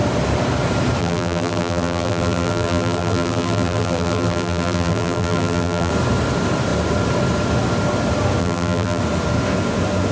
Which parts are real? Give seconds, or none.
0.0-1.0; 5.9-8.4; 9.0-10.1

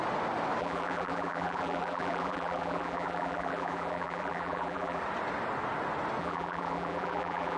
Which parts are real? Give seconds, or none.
0.0-0.6; 5.0-6.2